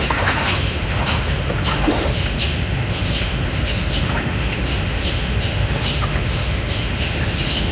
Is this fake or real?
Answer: fake